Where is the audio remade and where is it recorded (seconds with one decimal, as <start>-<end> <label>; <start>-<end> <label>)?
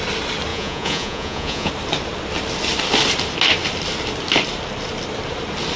0.0-0.5 recorded; 0.5-1.7 remade; 1.7-5.8 recorded